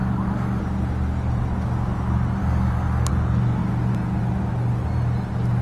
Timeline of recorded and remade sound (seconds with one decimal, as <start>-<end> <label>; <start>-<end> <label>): 0.0-0.6 remade; 0.6-2.4 recorded; 2.4-3.1 remade; 3.1-5.6 recorded